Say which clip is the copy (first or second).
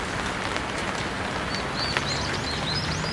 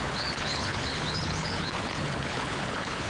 second